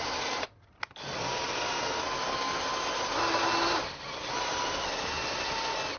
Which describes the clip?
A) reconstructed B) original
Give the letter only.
B